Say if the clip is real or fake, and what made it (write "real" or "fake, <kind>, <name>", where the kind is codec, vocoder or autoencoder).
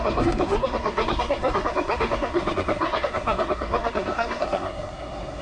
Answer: fake, codec, SNAC